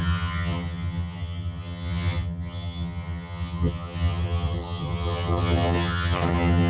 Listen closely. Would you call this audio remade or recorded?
remade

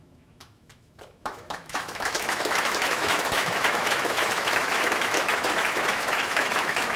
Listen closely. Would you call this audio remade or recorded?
remade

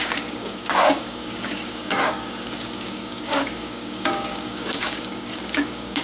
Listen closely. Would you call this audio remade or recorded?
remade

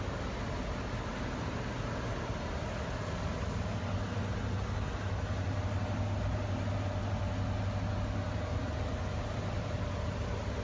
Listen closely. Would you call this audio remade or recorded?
recorded